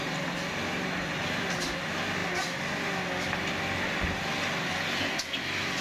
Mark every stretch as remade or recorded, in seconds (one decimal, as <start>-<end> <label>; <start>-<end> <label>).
0.0-5.8 recorded